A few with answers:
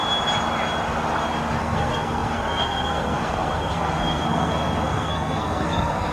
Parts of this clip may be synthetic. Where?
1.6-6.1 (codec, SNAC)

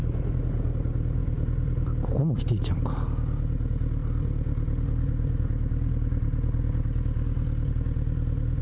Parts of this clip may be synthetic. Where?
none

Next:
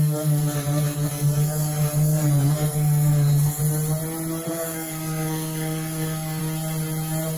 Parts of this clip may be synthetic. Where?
0.0-3.6 (codec, SNAC); 4.5-6.4

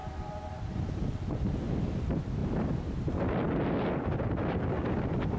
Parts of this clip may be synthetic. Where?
0.0-1.1 (vocoder, BigVGAN v2); 2.4-3.1